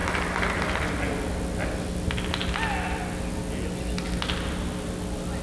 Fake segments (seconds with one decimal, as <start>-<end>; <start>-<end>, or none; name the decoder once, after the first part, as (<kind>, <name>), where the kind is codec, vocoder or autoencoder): none